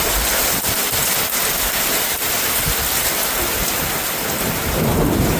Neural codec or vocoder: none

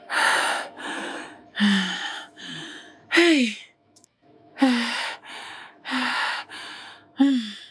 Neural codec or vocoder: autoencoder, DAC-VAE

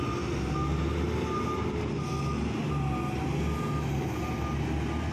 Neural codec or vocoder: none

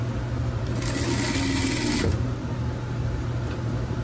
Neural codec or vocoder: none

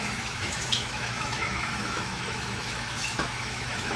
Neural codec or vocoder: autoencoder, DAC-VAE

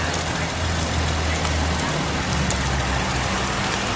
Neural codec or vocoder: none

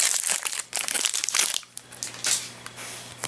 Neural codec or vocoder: none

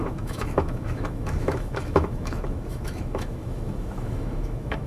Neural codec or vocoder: autoencoder, DAC-VAE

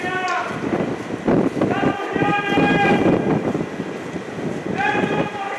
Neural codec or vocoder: none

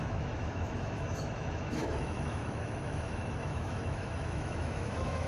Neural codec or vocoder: autoencoder, DAC-VAE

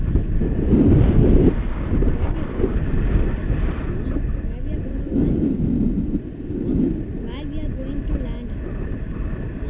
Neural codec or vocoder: none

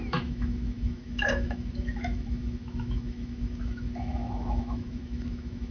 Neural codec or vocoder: autoencoder, DAC-VAE